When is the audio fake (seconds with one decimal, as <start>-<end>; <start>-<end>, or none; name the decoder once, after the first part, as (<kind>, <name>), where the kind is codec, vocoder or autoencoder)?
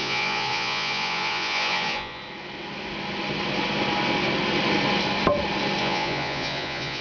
0.0-2.2 (vocoder, Vocos); 5.8-7.0